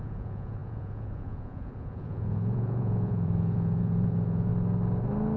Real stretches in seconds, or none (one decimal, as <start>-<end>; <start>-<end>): 4.5-5.4